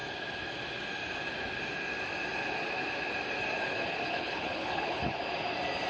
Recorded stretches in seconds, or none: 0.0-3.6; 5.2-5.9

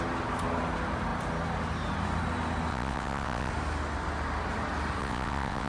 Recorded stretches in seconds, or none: 0.0-2.7; 3.5-5.0

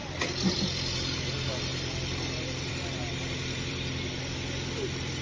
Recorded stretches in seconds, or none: 1.2-1.7; 4.2-5.2